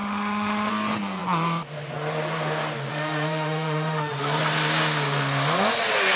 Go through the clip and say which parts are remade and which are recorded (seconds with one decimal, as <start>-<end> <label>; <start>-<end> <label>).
0.0-0.7 remade; 0.7-2.9 recorded; 2.9-4.2 remade; 4.2-6.2 recorded